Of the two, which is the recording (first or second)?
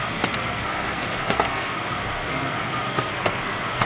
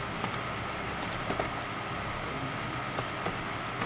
second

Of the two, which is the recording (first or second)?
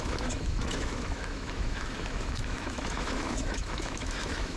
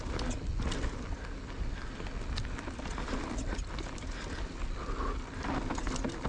second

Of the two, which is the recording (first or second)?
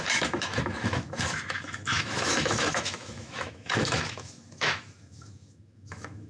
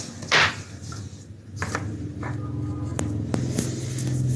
second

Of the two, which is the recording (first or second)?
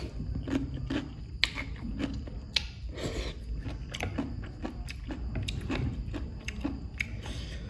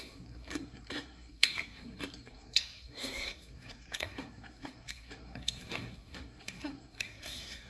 first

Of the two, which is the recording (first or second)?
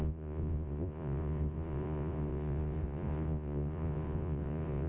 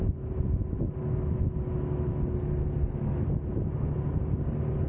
second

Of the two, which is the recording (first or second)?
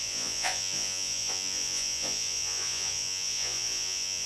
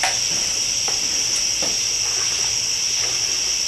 second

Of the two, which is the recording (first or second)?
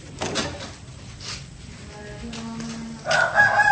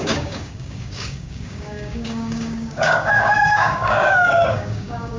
first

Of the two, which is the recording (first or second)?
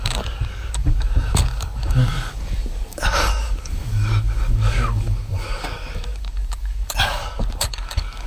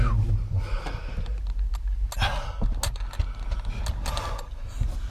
second